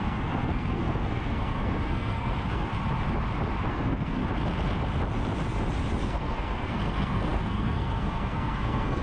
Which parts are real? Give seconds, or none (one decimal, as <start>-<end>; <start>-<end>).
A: 2.7-3.7; 4.2-6.0